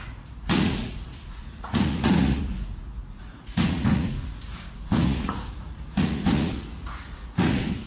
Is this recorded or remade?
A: remade